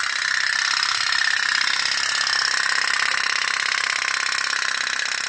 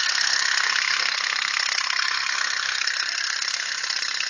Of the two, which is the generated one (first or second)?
second